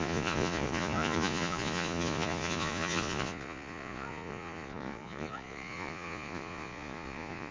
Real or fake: fake